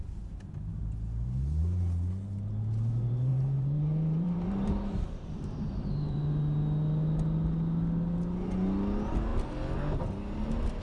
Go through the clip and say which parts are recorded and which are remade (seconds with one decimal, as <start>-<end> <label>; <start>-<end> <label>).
0.0-3.3 recorded; 3.3-6.4 remade; 6.4-10.8 recorded